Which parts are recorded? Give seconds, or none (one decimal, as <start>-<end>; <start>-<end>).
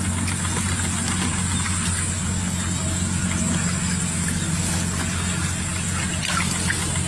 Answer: 0.0-7.1